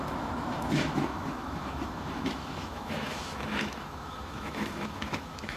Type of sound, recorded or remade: remade